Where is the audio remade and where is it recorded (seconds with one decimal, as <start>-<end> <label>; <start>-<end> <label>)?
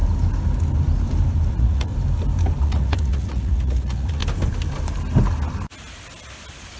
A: 0.0-1.5 recorded; 1.5-1.9 remade; 1.9-2.6 recorded; 2.6-4.2 remade; 4.2-6.8 recorded